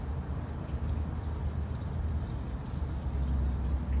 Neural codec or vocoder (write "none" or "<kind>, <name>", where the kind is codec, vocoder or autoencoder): none